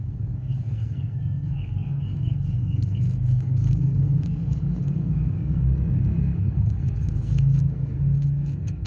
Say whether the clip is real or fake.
fake